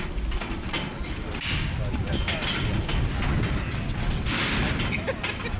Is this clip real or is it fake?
real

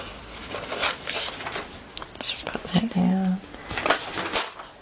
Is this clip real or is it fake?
real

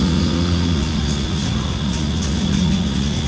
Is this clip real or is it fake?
fake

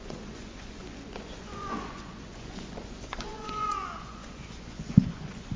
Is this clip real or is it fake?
fake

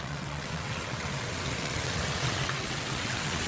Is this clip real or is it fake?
fake